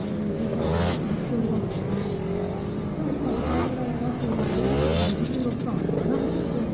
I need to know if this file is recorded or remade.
recorded